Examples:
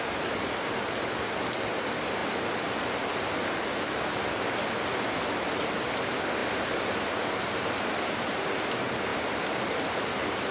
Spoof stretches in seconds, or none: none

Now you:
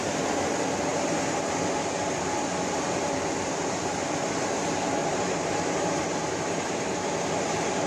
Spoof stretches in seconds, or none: 5.0-6.6 (vocoder, BigVGAN v2)

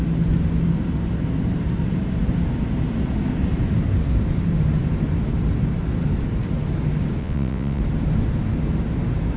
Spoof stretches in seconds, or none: 7.2-7.8 (vocoder, WaveNeXt)

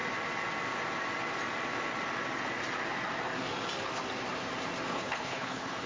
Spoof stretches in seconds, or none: 4.9-5.9 (codec, HILCodec)

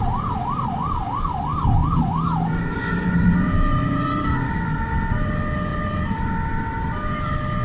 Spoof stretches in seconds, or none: 1.8-4.7 (vocoder, BigVGAN v2); 5.7-6.2